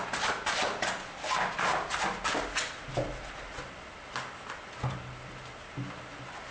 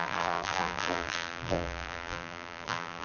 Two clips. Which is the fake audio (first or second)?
second